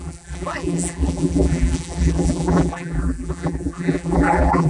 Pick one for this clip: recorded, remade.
remade